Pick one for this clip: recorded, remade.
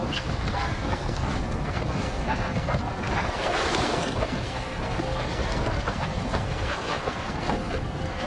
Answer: remade